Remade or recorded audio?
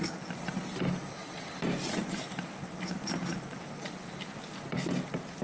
recorded